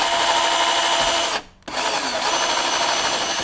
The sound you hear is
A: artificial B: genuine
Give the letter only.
B